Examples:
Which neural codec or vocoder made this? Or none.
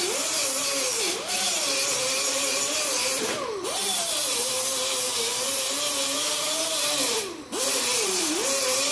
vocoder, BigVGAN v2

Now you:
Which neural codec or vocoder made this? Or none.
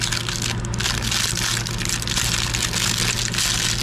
none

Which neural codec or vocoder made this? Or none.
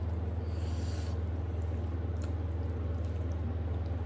none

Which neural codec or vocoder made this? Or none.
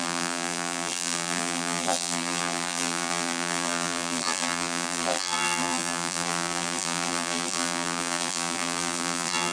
vocoder, BigVGAN v2